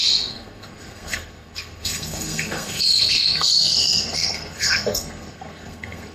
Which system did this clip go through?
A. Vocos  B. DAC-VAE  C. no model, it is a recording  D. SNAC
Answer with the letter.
D